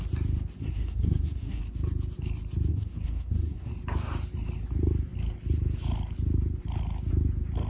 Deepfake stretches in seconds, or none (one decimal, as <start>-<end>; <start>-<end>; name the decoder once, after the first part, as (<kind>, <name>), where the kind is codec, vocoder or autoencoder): 0.6-1.6 (codec, SNAC); 2.7-3.7